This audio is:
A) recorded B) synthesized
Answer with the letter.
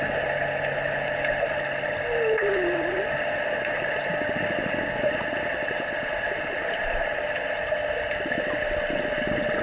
A